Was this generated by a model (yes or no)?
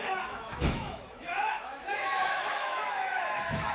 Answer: yes